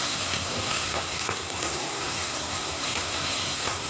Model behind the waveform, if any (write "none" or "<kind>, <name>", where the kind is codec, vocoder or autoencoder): codec, SNAC